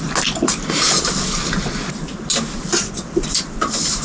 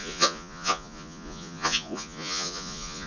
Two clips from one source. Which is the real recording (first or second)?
first